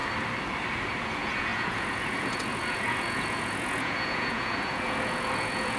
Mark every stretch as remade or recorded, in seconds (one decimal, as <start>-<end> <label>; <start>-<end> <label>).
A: 0.0-1.0 recorded; 1.0-5.8 remade